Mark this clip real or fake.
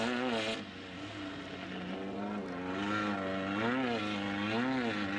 real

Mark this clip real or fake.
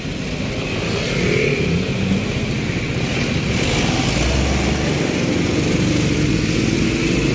real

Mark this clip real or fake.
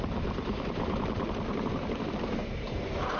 fake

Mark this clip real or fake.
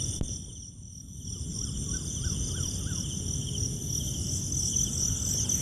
real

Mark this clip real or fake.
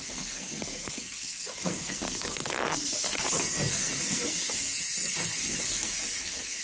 fake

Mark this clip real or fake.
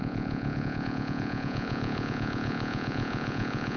fake